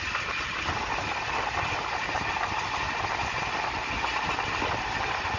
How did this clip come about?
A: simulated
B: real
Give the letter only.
B